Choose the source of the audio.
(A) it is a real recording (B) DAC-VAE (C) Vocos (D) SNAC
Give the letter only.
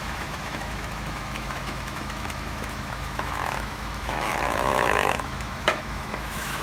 B